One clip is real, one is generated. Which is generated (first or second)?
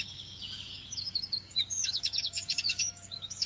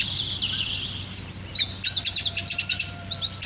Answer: first